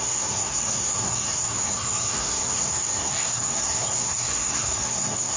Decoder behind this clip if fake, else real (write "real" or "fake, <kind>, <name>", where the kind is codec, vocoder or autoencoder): fake, codec, SNAC